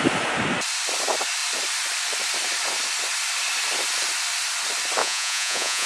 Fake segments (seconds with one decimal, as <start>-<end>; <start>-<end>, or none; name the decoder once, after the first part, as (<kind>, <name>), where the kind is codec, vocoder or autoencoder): 5.0-5.9 (vocoder, Vocos)